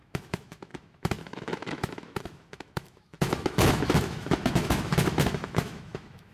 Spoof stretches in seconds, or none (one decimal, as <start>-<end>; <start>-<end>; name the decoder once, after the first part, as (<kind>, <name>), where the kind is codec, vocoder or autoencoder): 0.0-6.3 (autoencoder, DAC-VAE)